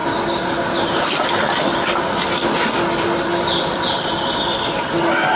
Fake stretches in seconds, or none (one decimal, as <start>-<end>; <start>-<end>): none

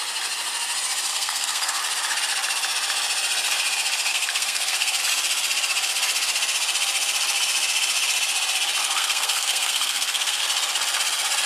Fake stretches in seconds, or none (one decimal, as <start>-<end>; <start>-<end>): 1.1-1.8; 4.1-5.0; 8.8-10.4